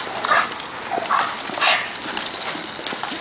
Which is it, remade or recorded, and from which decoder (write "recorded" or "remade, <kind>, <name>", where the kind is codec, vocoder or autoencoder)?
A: recorded